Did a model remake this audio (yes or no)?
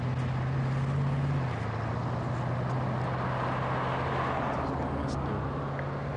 no